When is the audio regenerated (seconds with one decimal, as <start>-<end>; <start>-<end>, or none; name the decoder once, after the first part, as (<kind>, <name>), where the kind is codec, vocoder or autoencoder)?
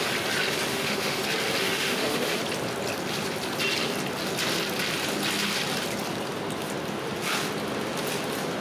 0.7-1.2 (autoencoder, DAC-VAE); 1.6-2.4